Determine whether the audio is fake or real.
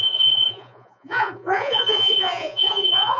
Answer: fake